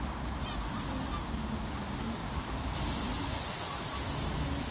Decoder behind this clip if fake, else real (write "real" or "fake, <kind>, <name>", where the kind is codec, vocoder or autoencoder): real